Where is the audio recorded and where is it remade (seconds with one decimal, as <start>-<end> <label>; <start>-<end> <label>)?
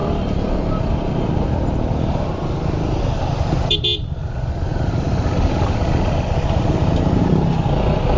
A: 0.0-4.7 recorded; 4.7-7.3 remade; 7.3-8.2 recorded